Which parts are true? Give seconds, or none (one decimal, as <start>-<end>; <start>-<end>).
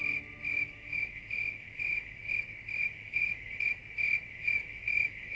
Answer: 0.0-0.5; 2.2-2.8; 3.7-4.3